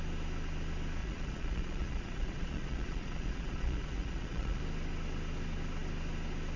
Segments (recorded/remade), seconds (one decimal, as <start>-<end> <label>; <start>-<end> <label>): 0.0-1.0 recorded; 1.0-4.6 remade; 4.6-6.6 recorded